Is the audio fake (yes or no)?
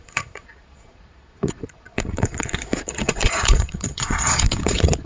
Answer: yes